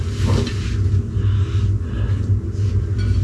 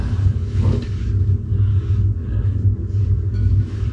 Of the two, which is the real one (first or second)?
first